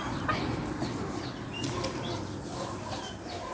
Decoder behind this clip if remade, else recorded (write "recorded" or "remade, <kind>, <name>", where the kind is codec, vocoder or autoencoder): recorded